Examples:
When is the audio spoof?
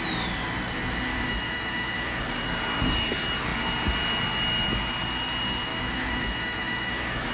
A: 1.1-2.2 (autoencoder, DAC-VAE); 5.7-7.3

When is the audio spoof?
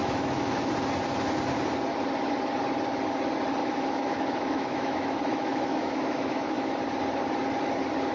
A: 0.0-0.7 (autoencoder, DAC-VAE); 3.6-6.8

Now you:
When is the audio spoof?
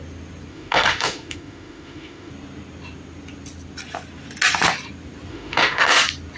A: 0.5-2.3 (autoencoder, DAC-VAE); 5.3-5.9